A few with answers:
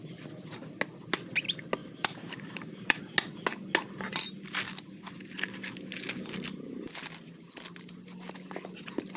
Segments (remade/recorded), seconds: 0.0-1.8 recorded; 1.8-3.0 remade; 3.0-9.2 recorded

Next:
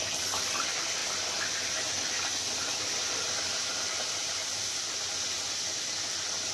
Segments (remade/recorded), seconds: 0.0-2.6 recorded; 2.6-4.7 remade; 4.7-6.5 recorded

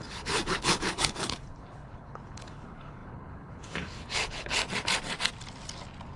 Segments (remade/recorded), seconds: 0.0-4.6 remade; 4.6-6.2 recorded

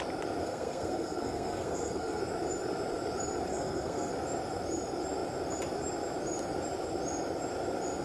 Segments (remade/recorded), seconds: 0.0-0.4 recorded; 0.4-2.2 remade; 2.2-3.5 recorded; 3.5-4.1 remade; 4.1-8.0 recorded

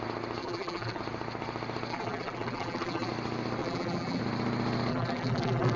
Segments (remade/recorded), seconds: 0.0-0.4 recorded; 0.4-1.0 remade; 1.0-1.9 recorded; 1.9-3.1 remade; 3.1-3.6 recorded; 3.6-4.2 remade; 4.2-4.9 recorded; 4.9-5.8 remade

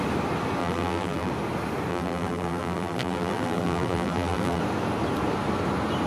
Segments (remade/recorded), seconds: 0.0-0.6 recorded; 0.6-1.3 remade; 1.3-1.9 recorded; 1.9-4.6 remade; 4.6-6.1 recorded

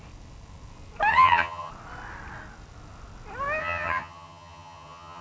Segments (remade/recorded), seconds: 0.0-1.1 recorded; 1.1-1.7 remade; 1.7-3.6 recorded; 3.6-5.2 remade

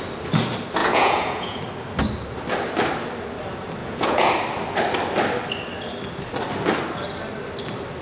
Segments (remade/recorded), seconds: 0.0-0.8 recorded; 0.8-1.6 remade; 1.6-3.8 recorded; 3.8-4.3 remade; 4.3-8.0 recorded